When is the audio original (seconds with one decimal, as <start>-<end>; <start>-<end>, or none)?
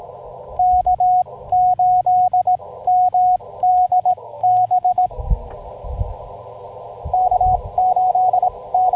0.0-3.7; 5.5-9.0